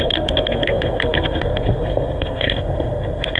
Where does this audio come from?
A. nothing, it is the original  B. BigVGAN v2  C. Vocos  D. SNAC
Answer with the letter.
D